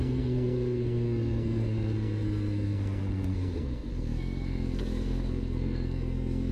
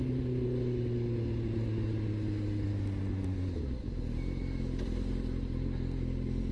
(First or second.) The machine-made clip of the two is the first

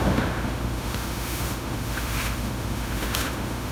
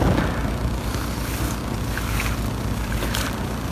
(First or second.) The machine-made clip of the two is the first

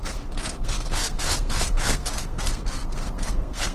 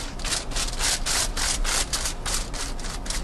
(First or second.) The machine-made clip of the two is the first